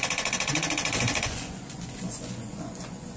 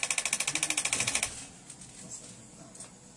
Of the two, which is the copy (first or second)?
first